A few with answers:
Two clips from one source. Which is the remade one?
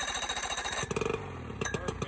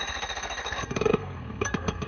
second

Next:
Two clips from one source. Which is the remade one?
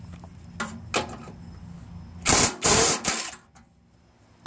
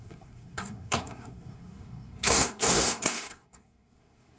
second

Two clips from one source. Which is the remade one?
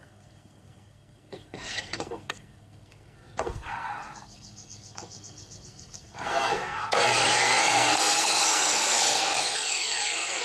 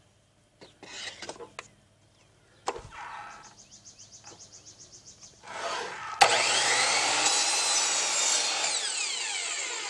first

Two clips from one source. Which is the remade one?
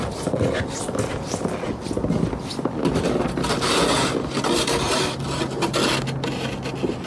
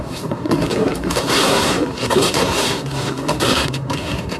second